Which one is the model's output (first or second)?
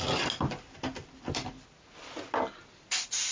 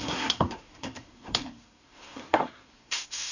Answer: second